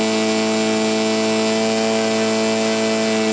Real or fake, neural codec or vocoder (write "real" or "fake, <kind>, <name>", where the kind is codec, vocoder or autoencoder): real